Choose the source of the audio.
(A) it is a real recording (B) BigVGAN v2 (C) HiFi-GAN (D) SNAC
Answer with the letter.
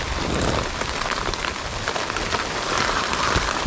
A